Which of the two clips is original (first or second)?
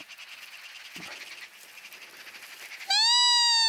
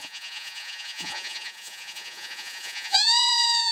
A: first